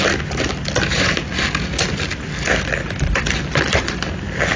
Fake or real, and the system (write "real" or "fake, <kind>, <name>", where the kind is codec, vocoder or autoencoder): real